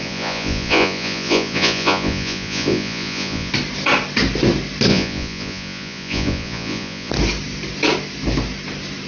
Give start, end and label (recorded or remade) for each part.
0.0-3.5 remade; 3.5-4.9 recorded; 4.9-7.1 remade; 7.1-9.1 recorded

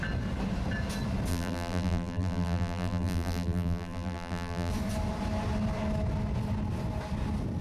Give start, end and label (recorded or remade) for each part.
0.0-1.3 recorded; 1.3-4.7 remade; 4.7-7.6 recorded

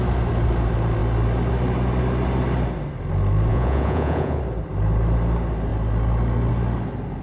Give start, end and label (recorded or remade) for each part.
0.0-3.5 recorded; 3.5-4.4 remade; 4.4-7.2 recorded

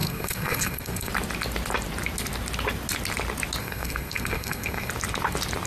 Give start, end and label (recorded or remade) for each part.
0.0-1.1 remade; 1.1-3.6 recorded; 3.6-4.9 remade; 4.9-5.7 recorded

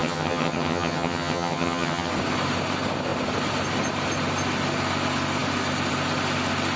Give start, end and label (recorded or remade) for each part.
0.0-2.1 remade; 2.1-6.8 recorded

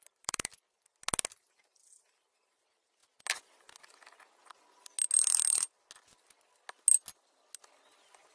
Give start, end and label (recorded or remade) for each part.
0.0-0.5 remade; 0.5-1.3 recorded; 1.3-3.0 remade; 3.0-8.3 recorded

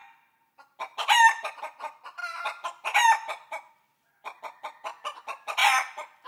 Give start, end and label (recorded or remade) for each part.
0.0-1.6 remade; 1.6-2.2 recorded; 2.2-4.4 remade; 4.4-5.6 recorded; 5.6-6.3 remade

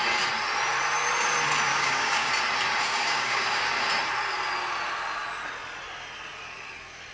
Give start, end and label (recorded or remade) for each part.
0.0-1.7 recorded; 1.7-2.3 remade; 2.3-2.9 recorded; 2.9-3.7 remade; 3.7-7.1 recorded